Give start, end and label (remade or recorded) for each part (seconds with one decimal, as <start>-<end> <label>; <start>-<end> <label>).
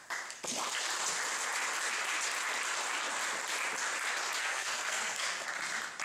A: 0.0-4.4 recorded; 4.4-5.5 remade; 5.5-6.0 recorded